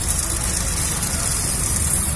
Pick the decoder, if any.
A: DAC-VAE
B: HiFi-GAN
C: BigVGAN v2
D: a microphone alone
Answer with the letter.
D